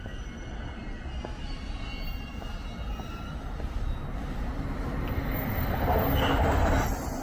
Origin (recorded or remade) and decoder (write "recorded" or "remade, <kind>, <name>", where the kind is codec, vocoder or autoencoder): recorded